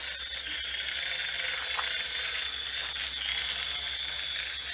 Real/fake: real